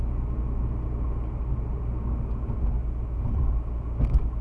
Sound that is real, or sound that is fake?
real